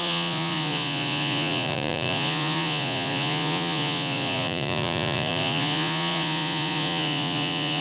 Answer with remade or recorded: remade